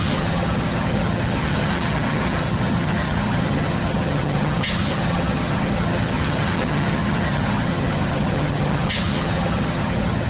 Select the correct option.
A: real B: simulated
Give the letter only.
B